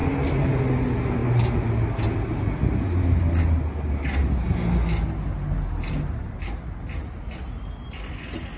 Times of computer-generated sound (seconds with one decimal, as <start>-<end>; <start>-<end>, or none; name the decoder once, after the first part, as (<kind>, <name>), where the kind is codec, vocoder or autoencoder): none